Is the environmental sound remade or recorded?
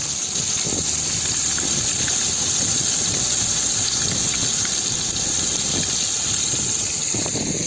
recorded